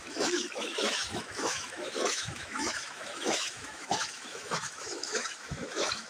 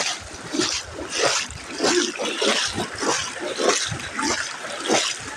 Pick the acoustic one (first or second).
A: second